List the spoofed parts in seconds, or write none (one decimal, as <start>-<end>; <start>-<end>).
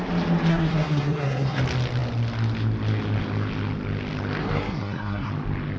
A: 0.5-1.6; 4.4-5.3